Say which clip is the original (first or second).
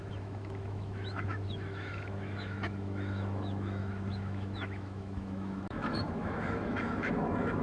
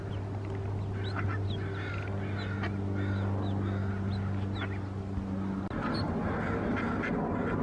second